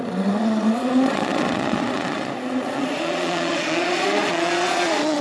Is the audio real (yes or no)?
no